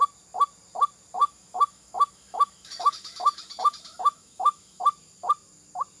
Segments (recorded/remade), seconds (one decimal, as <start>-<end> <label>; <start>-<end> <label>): 0.0-1.2 recorded; 1.2-4.8 remade; 4.8-6.0 recorded